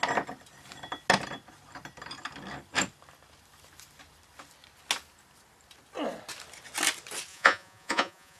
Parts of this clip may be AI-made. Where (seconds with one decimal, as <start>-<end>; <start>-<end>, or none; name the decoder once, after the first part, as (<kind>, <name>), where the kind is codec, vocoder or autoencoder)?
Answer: 7.3-8.4 (vocoder, Vocos)